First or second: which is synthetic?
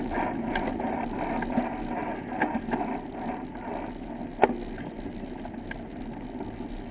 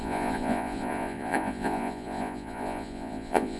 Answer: second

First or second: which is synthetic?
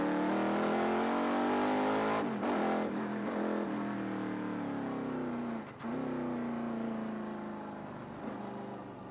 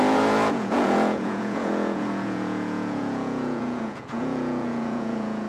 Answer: second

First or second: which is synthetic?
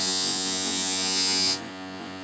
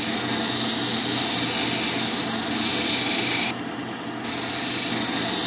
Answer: first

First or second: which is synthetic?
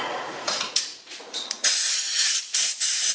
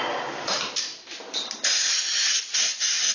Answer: first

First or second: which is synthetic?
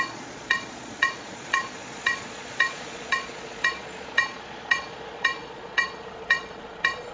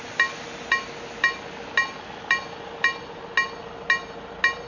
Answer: first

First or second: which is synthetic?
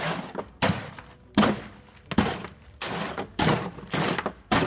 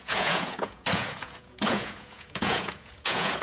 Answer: second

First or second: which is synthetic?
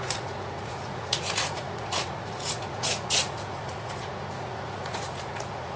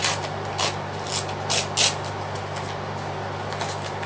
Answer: first